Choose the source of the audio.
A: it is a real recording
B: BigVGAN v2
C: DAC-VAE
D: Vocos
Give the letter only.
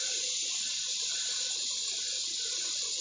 A